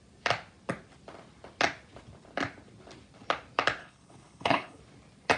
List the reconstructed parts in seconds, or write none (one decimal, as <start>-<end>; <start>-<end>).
3.8-4.8